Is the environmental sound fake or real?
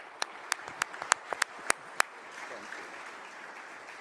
real